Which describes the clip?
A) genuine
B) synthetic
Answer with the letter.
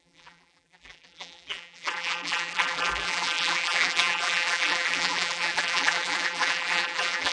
B